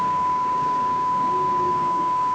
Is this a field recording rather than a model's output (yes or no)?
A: no